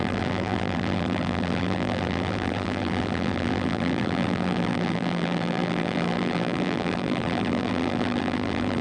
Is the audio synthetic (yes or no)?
yes